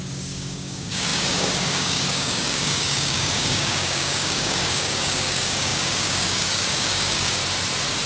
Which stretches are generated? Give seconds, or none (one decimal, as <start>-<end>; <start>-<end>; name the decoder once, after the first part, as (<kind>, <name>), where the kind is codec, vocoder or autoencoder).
0.0-7.4 (codec, DAC)